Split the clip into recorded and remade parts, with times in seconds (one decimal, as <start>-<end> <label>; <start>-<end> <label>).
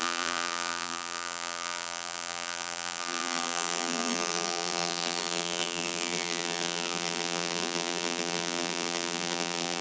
0.0-9.8 remade